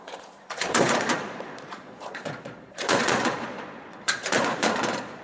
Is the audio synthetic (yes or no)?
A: yes